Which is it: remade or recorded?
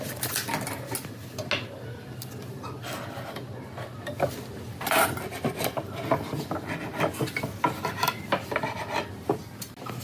recorded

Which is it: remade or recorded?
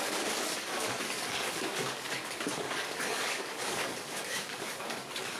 remade